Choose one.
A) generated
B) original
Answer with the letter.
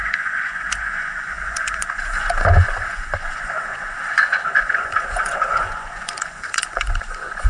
A